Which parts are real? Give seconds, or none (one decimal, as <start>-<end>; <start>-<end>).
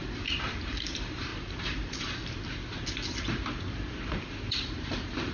1.3-4.5